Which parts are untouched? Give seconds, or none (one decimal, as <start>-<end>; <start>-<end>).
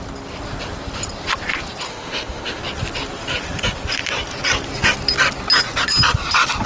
0.0-1.9; 2.6-6.7